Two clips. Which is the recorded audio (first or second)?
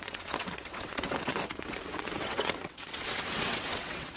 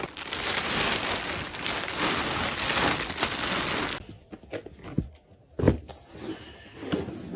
second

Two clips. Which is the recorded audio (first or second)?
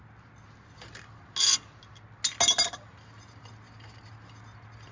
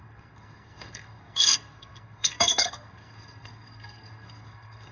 first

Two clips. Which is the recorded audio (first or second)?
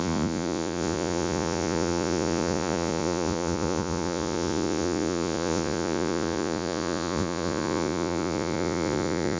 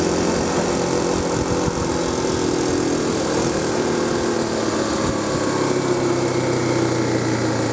second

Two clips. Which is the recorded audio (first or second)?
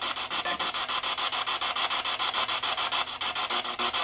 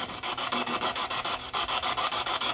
first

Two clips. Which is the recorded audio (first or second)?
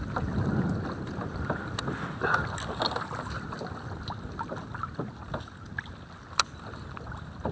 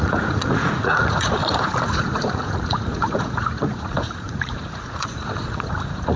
first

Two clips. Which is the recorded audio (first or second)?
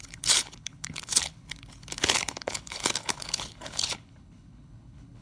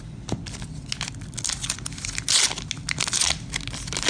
second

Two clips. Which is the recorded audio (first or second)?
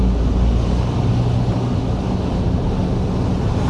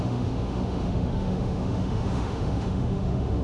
first